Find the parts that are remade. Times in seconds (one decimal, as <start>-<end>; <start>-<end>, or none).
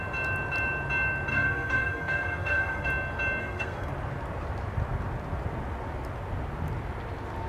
1.3-2.9; 3.4-3.9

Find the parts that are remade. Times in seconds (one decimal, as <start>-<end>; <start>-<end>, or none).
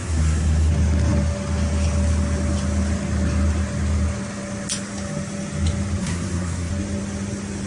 0.0-0.7; 6.0-6.7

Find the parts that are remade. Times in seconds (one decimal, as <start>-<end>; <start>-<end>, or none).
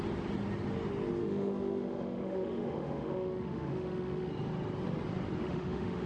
1.2-4.3; 5.4-6.1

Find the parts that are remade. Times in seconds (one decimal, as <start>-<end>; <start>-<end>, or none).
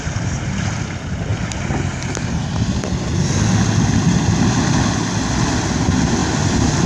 none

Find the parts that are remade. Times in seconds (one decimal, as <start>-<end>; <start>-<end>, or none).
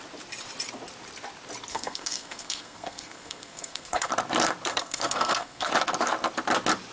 1.7-4.1; 4.7-5.7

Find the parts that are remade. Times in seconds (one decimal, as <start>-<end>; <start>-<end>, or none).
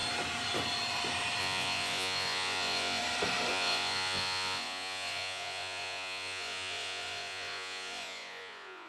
1.4-3.0; 3.5-8.9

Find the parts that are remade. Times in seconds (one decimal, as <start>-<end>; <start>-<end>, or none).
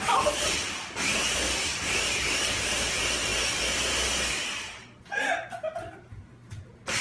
none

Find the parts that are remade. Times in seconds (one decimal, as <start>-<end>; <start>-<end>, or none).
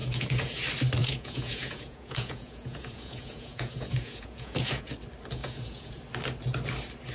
0.0-0.6; 1.0-4.9; 5.4-6.0